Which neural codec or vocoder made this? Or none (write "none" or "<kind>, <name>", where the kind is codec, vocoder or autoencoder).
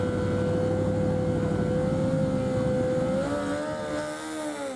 none